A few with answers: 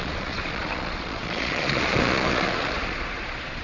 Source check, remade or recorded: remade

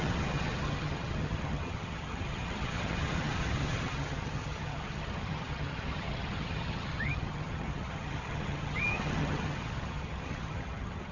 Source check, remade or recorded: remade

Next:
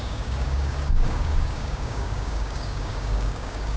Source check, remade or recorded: remade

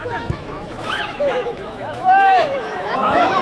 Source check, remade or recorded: remade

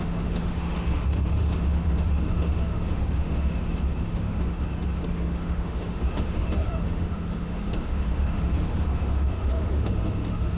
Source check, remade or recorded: remade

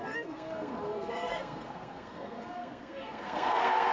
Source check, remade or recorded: remade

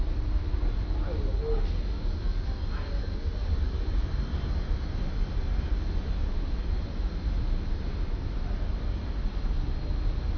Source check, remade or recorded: recorded